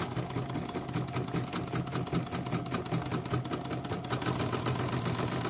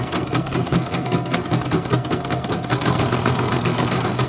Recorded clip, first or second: first